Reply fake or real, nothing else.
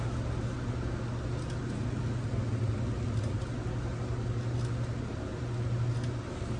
real